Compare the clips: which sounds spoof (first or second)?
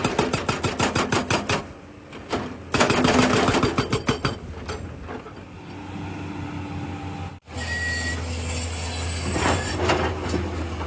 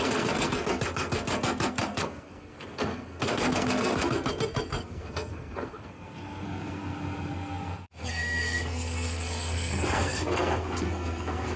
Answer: second